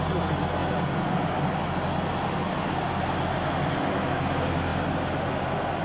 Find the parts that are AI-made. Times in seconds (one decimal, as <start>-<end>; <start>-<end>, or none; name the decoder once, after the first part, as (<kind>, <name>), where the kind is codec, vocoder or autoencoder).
none